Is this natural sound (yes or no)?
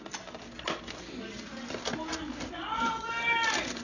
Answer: yes